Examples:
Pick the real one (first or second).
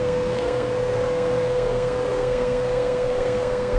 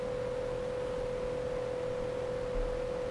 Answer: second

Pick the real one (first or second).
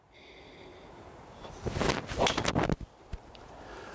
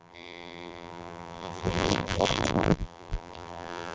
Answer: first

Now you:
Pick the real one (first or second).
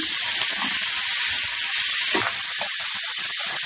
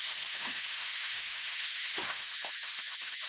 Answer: first